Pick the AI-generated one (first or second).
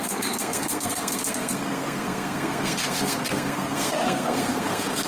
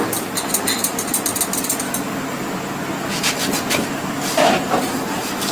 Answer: first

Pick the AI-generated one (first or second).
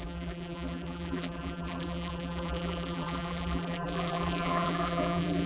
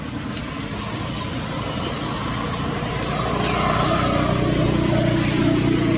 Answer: first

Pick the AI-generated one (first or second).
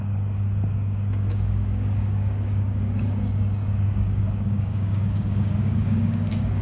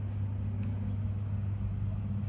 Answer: first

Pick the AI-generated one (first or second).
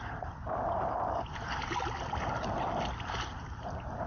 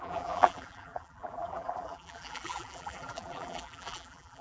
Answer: second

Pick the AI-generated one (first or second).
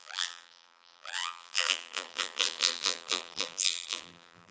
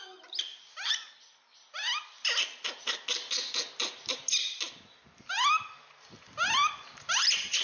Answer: first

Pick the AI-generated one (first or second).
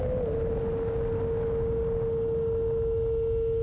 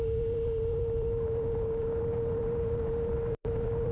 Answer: second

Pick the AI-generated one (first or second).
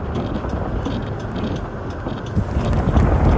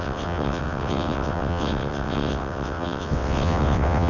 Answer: second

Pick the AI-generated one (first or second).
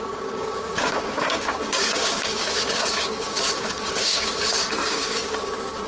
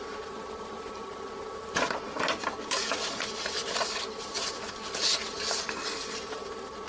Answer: first